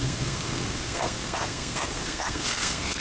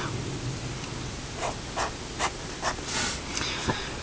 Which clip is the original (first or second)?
second